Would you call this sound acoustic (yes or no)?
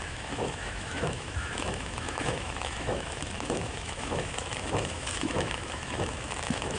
no